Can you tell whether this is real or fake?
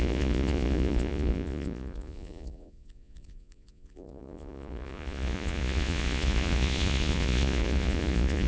fake